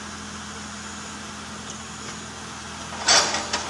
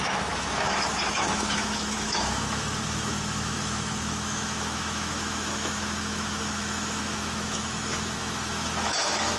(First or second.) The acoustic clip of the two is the first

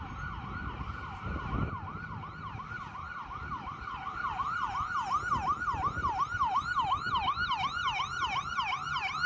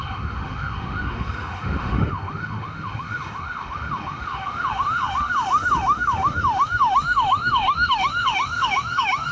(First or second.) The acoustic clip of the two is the first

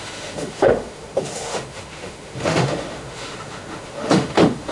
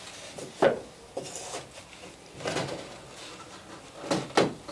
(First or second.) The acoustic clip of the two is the second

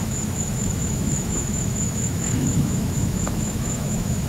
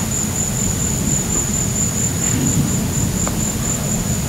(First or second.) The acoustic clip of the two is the second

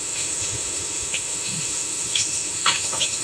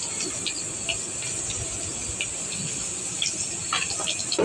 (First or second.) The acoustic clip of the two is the second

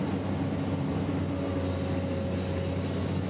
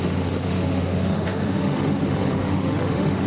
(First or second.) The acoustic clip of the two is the first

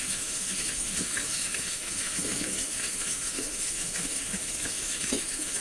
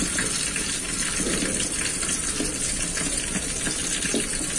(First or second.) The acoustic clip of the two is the second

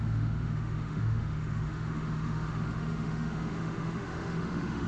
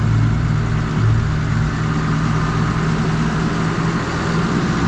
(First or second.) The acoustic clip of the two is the second